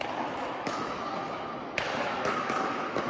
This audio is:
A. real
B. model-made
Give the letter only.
B